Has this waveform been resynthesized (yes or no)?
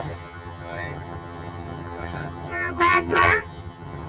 yes